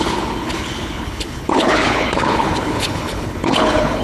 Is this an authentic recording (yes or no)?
no